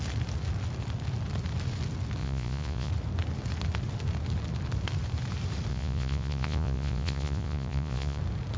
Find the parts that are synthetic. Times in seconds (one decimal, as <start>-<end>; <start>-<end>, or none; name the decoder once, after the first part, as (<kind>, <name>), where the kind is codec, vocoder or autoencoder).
2.2-2.9 (vocoder, Vocos); 5.7-8.2